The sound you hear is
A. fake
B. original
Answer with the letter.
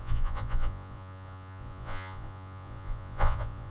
A